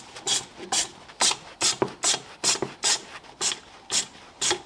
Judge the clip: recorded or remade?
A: recorded